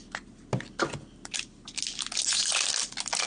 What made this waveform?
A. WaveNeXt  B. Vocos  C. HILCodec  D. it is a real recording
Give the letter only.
D